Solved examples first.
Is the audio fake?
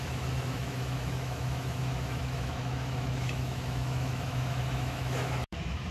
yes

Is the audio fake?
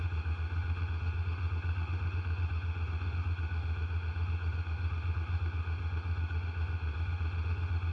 yes